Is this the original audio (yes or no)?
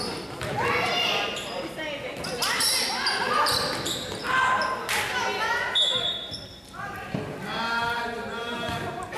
yes